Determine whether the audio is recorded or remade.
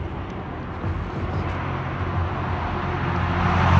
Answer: recorded